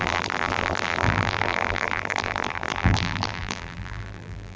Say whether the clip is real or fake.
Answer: fake